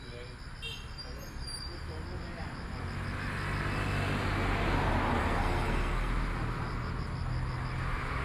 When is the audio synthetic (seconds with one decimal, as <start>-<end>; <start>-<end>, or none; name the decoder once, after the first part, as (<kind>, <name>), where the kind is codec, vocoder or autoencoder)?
5.2-6.1 (codec, SNAC)